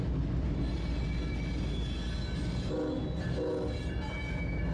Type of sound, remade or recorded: recorded